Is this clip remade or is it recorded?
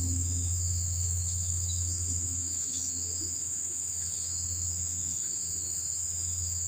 remade